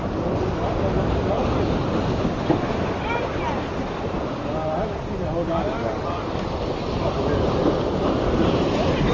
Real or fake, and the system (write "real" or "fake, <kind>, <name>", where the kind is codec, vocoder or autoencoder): real